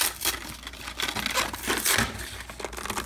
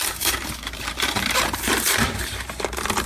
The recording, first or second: first